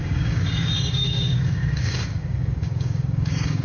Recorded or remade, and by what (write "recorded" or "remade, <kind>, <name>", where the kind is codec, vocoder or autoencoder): remade, codec, DAC